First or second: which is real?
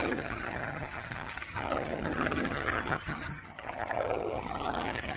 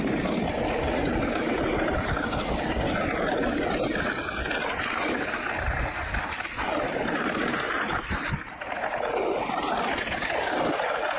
second